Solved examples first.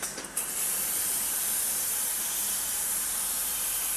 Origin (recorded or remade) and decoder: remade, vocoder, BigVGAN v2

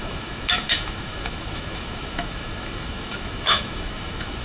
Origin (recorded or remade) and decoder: remade, autoencoder, DAC-VAE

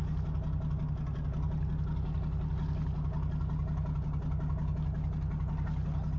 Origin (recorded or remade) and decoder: recorded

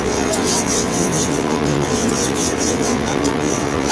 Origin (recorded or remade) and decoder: remade, vocoder, WaveNeXt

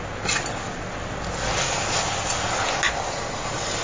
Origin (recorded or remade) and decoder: recorded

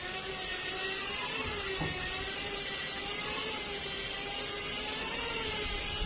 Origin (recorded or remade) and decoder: recorded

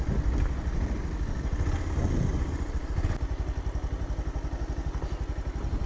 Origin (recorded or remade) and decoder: recorded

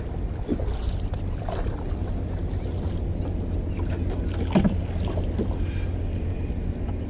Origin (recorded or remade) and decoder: recorded